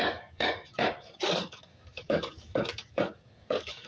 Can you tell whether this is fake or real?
fake